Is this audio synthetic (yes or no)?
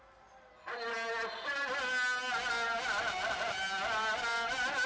no